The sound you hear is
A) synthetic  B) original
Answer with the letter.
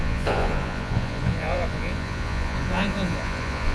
A